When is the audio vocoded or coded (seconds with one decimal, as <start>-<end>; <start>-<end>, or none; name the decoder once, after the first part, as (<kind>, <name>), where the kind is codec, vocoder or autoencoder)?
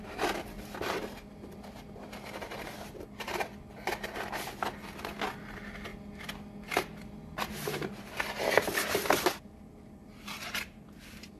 none